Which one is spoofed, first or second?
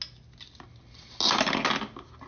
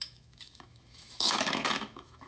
second